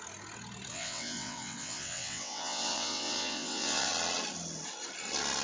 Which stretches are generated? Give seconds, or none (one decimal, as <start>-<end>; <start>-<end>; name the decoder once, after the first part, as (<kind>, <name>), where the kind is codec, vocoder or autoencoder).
0.7-3.9 (vocoder, WaveNeXt)